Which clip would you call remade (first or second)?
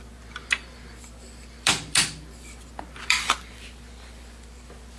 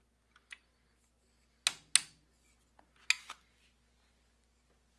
first